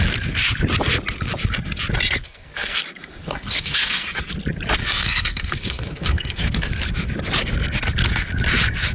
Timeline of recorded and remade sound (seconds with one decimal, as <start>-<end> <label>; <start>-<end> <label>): 0.0-2.2 recorded; 2.2-2.8 remade; 2.8-3.2 recorded; 3.2-4.3 remade; 4.3-4.8 recorded; 4.8-6.7 remade; 6.7-8.9 recorded